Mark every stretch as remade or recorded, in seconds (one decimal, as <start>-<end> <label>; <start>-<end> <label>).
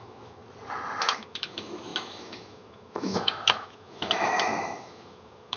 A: 0.0-0.4 remade; 0.4-1.0 recorded; 1.0-5.6 remade